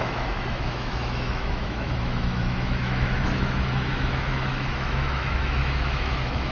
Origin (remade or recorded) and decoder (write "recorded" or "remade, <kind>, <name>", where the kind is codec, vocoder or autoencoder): remade, autoencoder, DAC-VAE